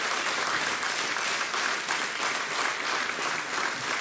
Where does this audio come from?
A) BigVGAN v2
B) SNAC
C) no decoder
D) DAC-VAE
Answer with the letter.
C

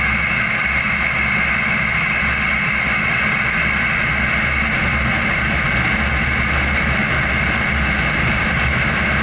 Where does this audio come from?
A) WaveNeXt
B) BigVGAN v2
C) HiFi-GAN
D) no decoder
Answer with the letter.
D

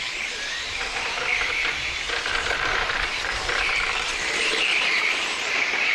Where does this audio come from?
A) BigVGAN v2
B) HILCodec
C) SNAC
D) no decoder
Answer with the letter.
A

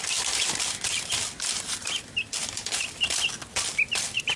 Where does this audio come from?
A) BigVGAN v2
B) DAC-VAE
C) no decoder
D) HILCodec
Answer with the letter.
C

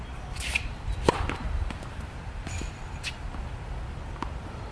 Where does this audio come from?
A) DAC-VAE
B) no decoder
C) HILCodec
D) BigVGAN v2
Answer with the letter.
D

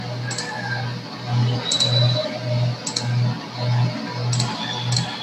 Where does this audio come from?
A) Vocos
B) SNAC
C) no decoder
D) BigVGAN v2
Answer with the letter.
C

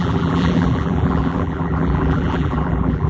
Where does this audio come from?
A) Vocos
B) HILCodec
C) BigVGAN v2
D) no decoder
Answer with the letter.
C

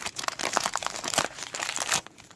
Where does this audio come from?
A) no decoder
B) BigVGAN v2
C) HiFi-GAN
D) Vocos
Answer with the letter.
B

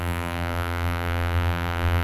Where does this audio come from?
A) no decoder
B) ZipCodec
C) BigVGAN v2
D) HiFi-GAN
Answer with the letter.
C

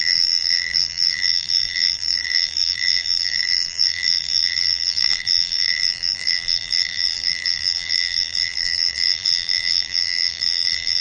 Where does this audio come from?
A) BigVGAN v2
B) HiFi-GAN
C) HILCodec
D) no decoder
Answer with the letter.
A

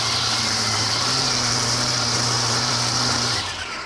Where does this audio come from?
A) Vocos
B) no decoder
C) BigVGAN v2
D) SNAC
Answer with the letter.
C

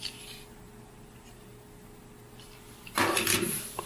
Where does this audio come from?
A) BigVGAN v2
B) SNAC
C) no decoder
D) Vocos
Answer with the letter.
C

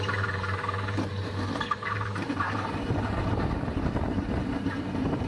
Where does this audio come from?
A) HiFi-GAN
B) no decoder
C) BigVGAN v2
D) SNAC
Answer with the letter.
C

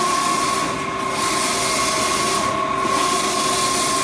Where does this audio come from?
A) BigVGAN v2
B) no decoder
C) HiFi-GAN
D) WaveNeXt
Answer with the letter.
B